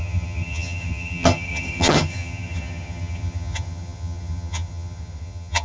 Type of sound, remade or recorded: remade